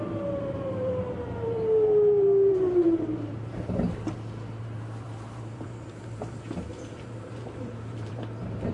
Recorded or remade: remade